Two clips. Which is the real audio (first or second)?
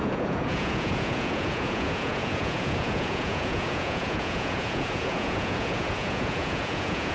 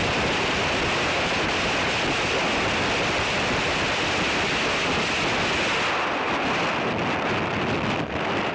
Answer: second